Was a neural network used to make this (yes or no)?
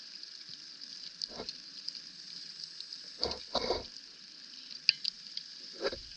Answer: no